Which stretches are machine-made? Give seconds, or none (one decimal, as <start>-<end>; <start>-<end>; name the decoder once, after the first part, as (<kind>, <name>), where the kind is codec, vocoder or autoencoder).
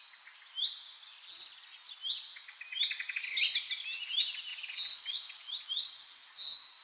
none